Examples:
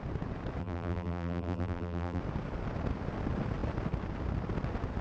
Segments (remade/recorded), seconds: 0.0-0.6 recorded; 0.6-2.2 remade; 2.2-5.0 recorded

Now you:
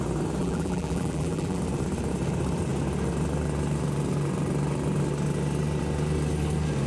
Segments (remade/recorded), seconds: 0.0-0.4 recorded; 0.4-1.6 remade; 1.6-6.9 recorded

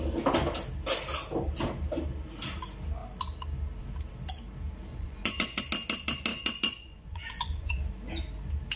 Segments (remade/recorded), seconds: 0.0-4.9 recorded; 4.9-5.6 remade; 5.6-6.3 recorded; 6.3-7.8 remade; 7.8-8.8 recorded